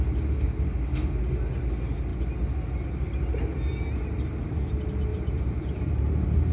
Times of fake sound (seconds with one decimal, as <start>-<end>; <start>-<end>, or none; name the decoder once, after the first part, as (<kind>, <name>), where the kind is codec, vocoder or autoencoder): 5.1-5.9 (vocoder, BigVGAN v2)